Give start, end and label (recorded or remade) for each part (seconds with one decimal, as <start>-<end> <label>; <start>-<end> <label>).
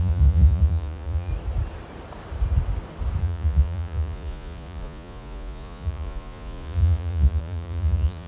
0.0-1.3 remade; 1.3-3.2 recorded; 3.2-8.3 remade